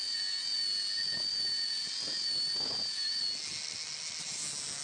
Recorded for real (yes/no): yes